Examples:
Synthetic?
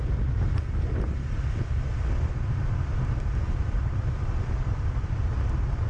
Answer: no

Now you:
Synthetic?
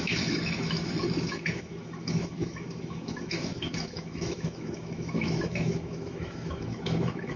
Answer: yes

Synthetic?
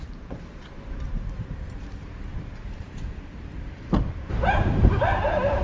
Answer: yes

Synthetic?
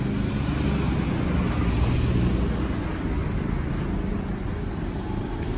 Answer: no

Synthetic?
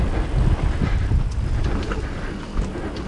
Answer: no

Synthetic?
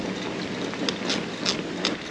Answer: no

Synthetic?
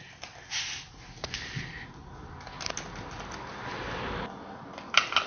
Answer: no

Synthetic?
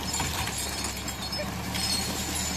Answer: no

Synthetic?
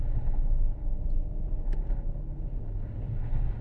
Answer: no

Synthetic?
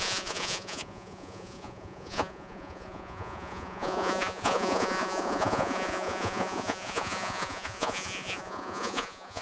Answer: yes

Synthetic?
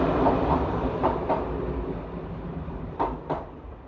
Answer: no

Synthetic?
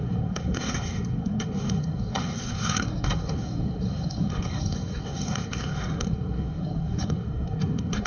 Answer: yes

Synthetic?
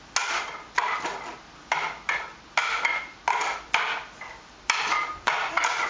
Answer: no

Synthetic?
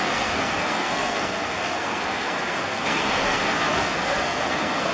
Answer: yes